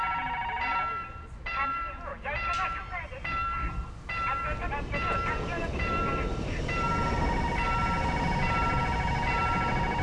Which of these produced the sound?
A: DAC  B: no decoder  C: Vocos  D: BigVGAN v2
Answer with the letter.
B